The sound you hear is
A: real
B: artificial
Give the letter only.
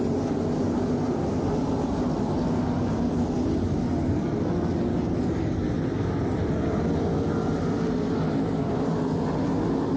A